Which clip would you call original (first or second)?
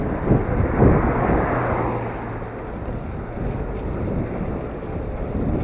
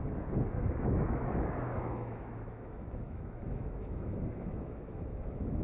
first